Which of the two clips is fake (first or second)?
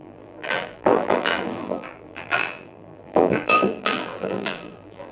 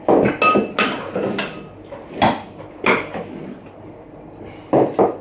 first